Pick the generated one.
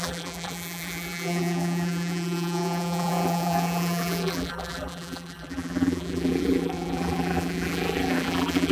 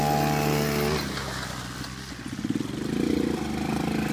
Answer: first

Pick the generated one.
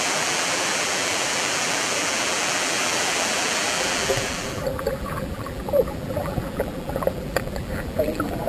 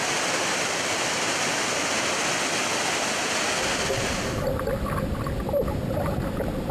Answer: first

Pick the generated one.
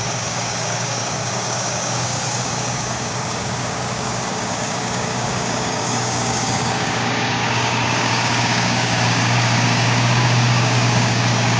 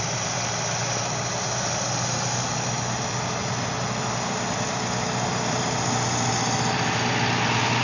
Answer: first